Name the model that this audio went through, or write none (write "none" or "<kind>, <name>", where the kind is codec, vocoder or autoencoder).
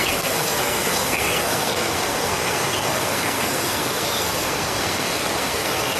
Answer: codec, SNAC